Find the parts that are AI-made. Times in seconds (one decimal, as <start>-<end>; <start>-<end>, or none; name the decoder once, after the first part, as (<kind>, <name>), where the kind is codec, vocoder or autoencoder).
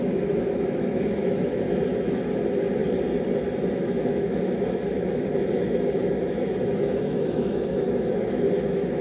0.0-2.8 (autoencoder, DAC-VAE); 3.7-9.0